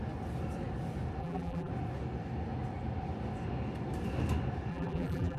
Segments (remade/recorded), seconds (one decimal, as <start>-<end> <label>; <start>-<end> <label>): 0.0-1.2 recorded; 1.2-1.7 remade; 1.7-4.7 recorded; 4.7-5.4 remade